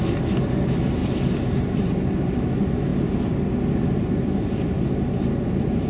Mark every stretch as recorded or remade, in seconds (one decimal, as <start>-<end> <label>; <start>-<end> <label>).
0.0-5.9 recorded